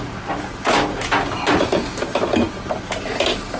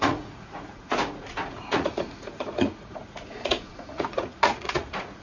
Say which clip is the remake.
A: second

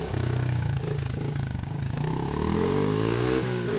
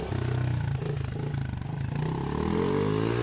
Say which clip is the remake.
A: first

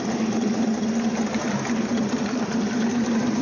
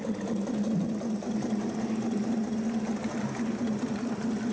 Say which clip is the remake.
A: first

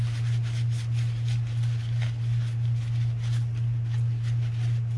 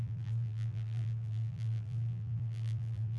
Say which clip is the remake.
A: second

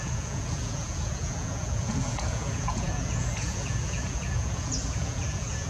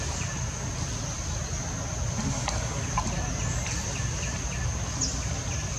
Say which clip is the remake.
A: first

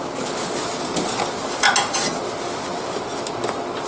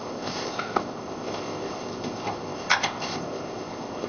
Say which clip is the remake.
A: second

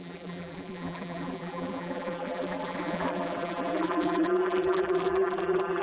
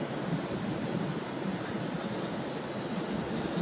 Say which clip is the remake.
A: first